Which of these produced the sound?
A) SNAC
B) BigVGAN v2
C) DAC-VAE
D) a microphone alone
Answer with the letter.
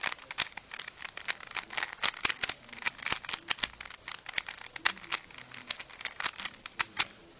D